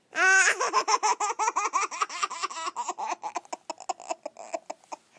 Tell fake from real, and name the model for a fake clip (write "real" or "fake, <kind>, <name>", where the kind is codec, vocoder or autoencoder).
real